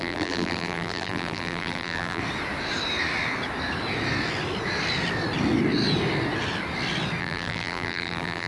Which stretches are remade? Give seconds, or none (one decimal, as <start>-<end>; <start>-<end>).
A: 0.0-2.2; 7.2-8.5